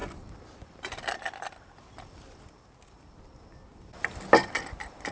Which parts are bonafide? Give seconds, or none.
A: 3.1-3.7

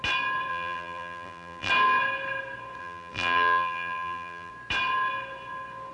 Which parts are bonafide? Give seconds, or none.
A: 0.0-0.5; 1.7-2.8; 4.5-5.9

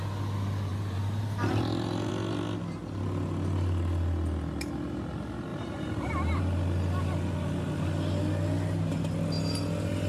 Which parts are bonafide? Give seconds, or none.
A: 0.0-0.7; 2.1-5.5; 6.4-10.1

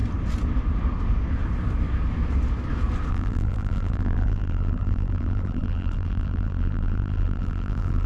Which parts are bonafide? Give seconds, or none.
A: 0.0-3.1

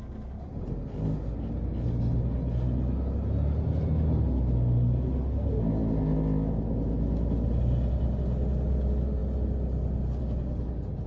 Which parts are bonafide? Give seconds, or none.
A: 0.0-11.1

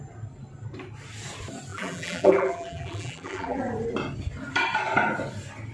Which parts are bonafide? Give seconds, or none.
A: 0.0-1.7; 3.6-5.7

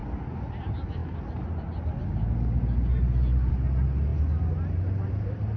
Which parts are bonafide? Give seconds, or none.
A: 0.0-5.6